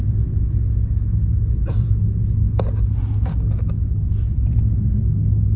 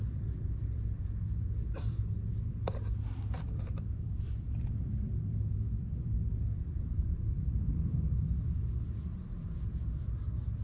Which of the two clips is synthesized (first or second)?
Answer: second